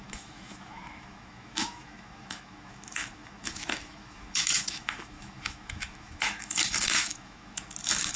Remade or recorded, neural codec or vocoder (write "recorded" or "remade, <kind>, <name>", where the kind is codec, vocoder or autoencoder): remade, autoencoder, DAC-VAE